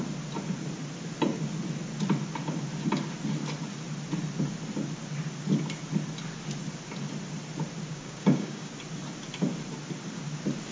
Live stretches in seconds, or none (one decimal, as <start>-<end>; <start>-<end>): 0.0-7.9; 8.7-10.7